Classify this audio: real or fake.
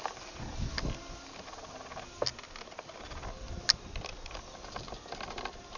real